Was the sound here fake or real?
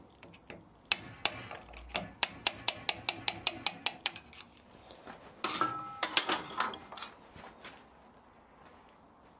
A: real